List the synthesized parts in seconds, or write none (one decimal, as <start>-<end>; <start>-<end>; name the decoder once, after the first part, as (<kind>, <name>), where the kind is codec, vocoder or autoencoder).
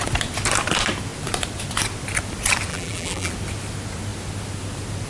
2.7-3.3 (vocoder, BigVGAN v2)